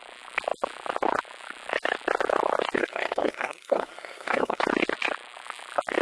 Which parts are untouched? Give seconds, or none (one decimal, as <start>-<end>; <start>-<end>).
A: 0.0-2.8; 4.6-6.0